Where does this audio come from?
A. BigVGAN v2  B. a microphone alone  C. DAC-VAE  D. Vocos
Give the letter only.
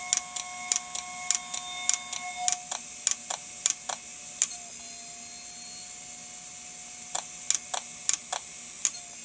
B